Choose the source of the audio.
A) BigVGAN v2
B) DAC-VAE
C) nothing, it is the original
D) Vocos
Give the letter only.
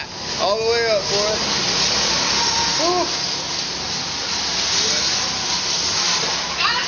C